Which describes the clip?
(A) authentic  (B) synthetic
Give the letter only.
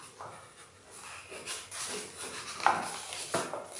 A